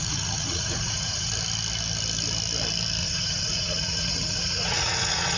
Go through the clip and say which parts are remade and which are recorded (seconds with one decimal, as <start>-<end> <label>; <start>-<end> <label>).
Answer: 0.0-1.3 remade; 1.3-3.0 recorded; 3.0-5.4 remade